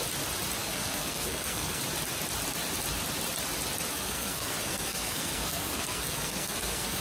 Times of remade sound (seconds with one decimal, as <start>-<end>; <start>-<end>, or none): 0.6-1.8; 3.9-7.0